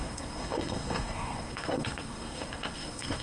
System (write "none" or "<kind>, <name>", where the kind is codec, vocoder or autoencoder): codec, SNAC